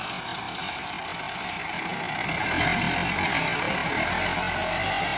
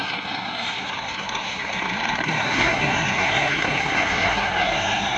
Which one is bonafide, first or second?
first